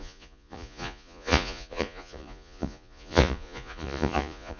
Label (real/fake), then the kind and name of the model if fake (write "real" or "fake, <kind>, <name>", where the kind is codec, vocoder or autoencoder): fake, vocoder, Vocos